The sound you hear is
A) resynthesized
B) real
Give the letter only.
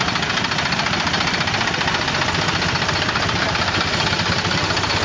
B